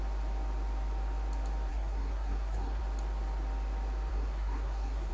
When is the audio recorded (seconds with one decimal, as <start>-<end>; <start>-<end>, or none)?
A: 0.0-1.7; 2.8-4.1